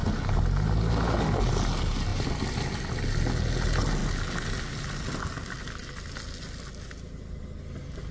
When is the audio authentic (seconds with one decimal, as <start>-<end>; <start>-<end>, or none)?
0.0-2.1; 3.2-8.1